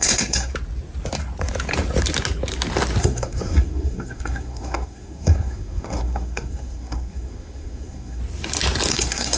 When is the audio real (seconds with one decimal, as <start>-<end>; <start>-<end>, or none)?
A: 0.5-3.0; 8.2-8.9